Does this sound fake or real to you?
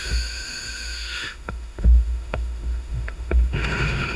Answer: fake